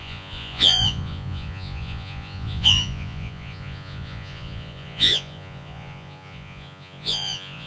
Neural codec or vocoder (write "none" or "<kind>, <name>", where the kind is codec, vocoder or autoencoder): vocoder, Vocos